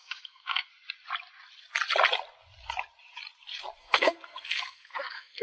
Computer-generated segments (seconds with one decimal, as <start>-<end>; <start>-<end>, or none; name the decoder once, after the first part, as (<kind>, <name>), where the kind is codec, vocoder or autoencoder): 0.0-0.7 (codec, SNAC); 3.8-5.4